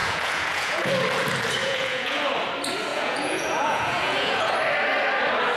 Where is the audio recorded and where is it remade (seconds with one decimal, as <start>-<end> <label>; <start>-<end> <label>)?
0.0-0.9 remade; 0.9-1.6 recorded; 1.6-2.2 remade; 2.2-2.9 recorded; 2.9-4.5 remade; 4.5-5.6 recorded